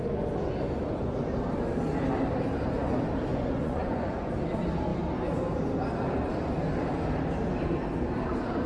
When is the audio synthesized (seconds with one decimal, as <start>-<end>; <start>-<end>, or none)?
3.3-4.3